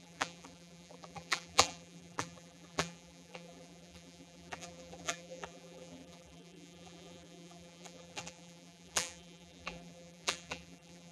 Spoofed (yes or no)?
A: yes